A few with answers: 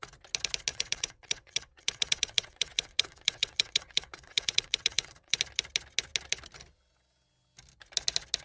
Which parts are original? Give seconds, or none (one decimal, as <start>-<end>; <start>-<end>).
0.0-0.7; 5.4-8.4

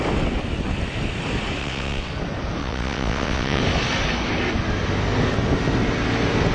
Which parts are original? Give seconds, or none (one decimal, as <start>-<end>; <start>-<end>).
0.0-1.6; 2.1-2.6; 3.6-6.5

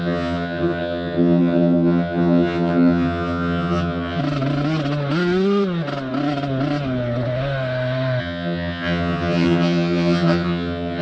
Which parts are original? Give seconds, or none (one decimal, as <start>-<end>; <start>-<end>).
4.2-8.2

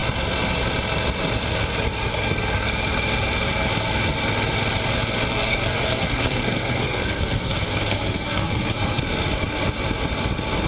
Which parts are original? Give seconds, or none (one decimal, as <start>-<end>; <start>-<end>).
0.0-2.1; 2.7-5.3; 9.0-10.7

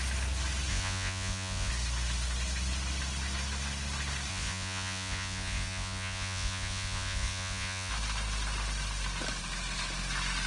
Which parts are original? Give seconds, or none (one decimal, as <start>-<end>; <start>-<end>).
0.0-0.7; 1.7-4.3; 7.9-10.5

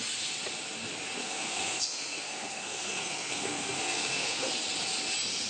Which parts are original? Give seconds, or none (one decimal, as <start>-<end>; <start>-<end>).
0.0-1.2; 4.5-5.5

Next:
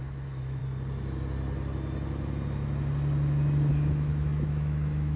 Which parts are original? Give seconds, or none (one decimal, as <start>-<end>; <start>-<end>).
0.6-3.7